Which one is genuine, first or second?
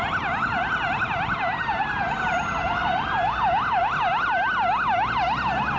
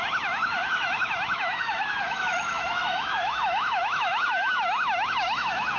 first